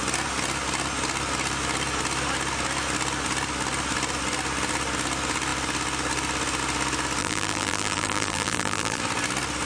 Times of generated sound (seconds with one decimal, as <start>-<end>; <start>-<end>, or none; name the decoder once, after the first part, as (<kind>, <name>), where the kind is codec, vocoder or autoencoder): 7.2-9.0 (vocoder, BigVGAN v2)